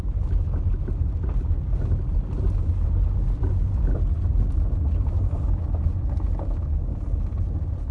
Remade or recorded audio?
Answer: recorded